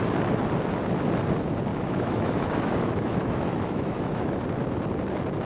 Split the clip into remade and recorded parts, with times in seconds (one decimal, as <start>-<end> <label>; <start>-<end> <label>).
0.0-1.7 recorded; 1.7-4.4 remade; 4.4-5.5 recorded